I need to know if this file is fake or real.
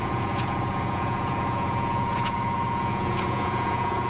fake